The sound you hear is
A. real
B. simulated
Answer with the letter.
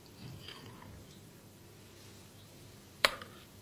B